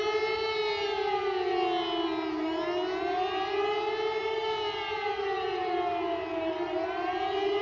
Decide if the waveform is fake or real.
real